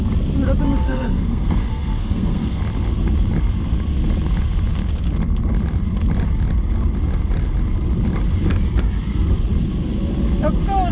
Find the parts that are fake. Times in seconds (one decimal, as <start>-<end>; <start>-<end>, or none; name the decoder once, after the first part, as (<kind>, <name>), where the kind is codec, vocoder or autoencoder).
0.8-2.6 (codec, SNAC)